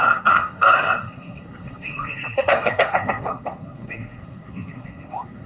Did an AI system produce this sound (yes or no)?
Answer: yes